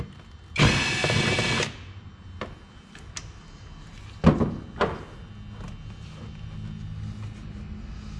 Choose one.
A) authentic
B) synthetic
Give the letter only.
A